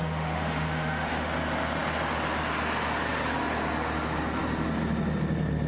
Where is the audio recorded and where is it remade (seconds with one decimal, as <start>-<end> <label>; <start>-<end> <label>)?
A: 0.0-1.3 remade; 1.3-5.7 recorded